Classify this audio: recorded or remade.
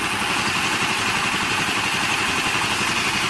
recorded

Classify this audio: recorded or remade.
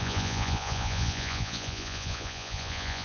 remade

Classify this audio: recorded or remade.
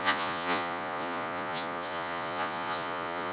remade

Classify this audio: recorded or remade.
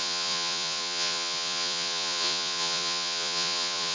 remade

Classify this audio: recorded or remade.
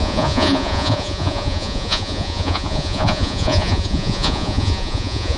remade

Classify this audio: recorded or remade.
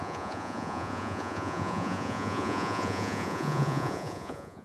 remade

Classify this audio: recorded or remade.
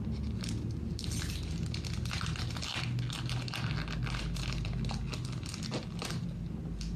recorded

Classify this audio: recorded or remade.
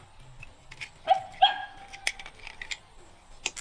recorded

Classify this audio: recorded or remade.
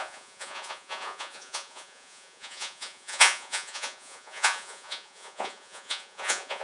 remade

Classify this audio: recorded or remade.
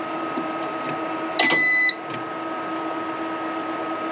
recorded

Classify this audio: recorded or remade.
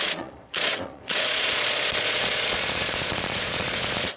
remade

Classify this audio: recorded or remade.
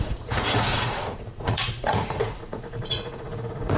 remade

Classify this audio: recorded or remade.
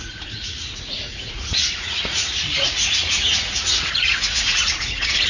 remade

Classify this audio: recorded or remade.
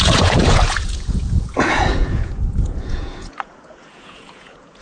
remade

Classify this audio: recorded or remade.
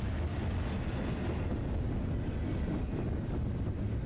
recorded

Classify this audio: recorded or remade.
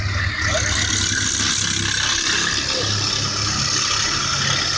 recorded